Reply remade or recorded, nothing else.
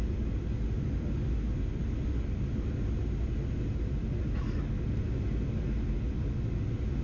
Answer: recorded